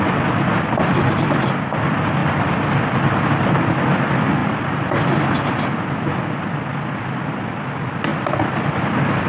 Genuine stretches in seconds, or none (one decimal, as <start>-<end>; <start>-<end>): 0.0-2.2; 3.3-8.1; 8.8-9.3